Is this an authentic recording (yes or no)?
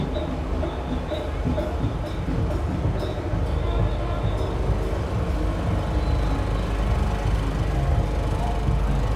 yes